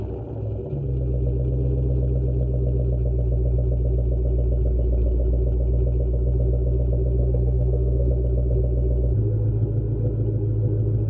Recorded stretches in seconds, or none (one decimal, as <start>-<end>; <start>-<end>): 0.0-7.2; 8.1-11.1